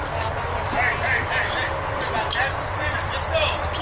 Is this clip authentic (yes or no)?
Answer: yes